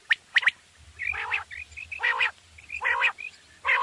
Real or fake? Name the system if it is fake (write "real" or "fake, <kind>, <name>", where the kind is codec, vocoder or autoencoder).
real